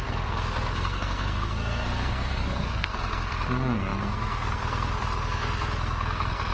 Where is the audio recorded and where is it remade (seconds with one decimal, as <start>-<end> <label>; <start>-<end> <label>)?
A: 0.0-6.5 remade